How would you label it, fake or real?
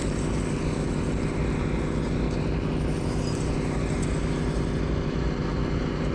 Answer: real